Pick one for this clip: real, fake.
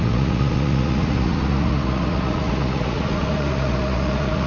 fake